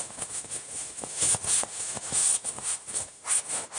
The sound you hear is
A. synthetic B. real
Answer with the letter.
A